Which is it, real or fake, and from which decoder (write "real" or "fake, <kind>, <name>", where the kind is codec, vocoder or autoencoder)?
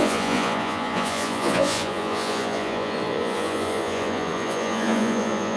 fake, vocoder, Vocos